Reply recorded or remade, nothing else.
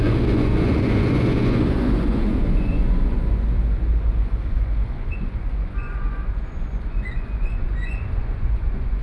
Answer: remade